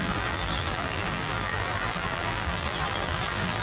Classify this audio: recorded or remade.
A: remade